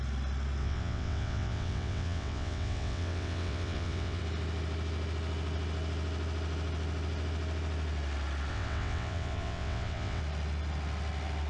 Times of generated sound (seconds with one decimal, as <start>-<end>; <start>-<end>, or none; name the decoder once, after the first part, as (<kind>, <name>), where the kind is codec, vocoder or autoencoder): 0.6-4.2 (vocoder, WaveNeXt); 8.5-10.2